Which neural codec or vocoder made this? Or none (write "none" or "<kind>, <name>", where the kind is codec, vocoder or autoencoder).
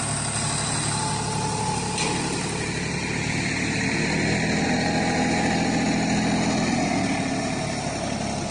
none